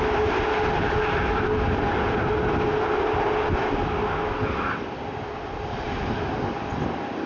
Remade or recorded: recorded